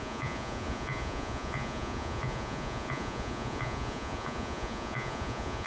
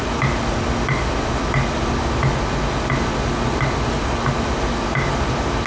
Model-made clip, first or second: first